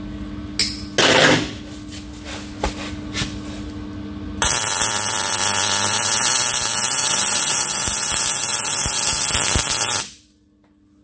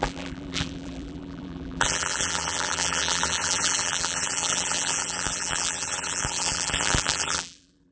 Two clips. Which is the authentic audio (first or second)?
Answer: first